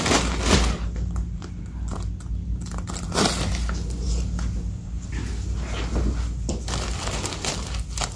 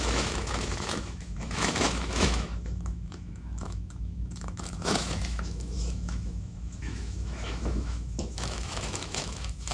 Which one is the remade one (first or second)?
second